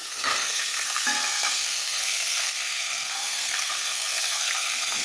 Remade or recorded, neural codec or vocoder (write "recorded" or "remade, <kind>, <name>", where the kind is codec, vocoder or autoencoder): remade, codec, SNAC